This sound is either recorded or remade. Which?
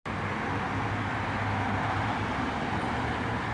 recorded